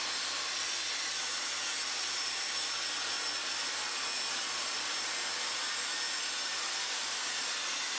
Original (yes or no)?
yes